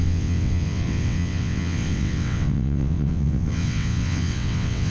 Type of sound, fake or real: fake